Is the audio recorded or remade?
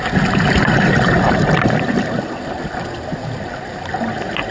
recorded